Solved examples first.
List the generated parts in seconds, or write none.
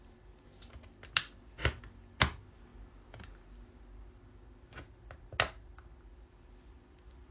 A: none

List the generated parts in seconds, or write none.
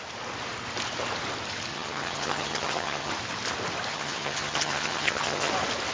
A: 1.7-3.1; 3.9-5.5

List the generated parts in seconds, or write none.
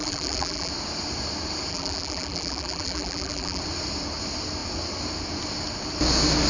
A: 0.0-0.7; 1.7-3.6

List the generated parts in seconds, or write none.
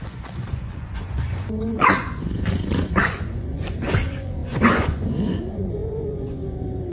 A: 0.0-6.9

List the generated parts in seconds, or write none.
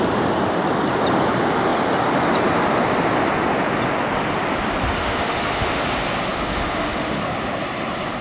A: 5.0-5.8; 6.3-7.2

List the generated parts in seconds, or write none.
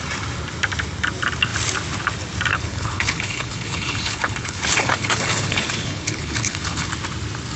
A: 2.5-6.9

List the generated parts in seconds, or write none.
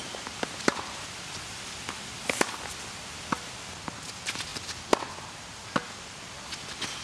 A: none